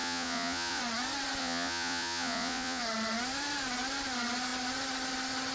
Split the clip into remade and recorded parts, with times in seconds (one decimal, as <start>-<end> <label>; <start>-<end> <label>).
0.0-0.8 remade; 0.8-1.4 recorded; 1.4-2.8 remade; 2.8-5.5 recorded